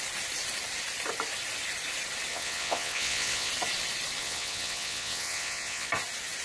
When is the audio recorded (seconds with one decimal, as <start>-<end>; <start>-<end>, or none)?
0.0-2.3; 3.5-4.2; 5.9-6.4